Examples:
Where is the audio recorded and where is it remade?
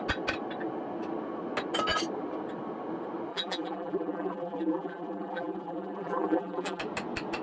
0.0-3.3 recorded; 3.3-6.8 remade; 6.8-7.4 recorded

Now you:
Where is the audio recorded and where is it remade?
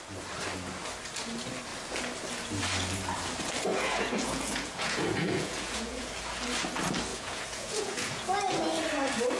0.0-3.7 recorded; 3.7-6.1 remade; 6.1-7.1 recorded; 7.1-8.6 remade; 8.6-9.4 recorded